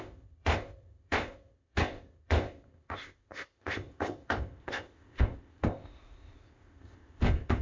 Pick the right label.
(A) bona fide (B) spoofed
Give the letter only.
B